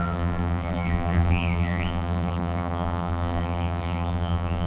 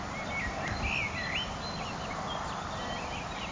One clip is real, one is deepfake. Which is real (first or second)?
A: second